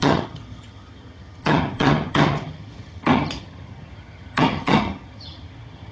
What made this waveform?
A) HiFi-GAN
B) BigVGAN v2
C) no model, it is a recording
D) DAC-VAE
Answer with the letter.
A